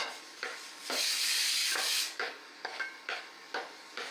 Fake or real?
fake